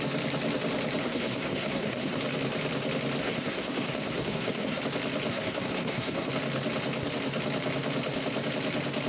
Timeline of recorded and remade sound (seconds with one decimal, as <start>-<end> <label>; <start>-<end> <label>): 0.0-1.0 recorded; 1.0-2.2 remade; 2.2-3.2 recorded; 3.2-4.8 remade; 4.8-5.3 recorded; 5.3-6.3 remade; 6.3-9.1 recorded